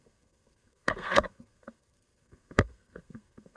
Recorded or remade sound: remade